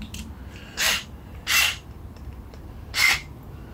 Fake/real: real